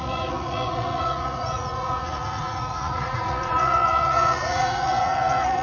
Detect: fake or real fake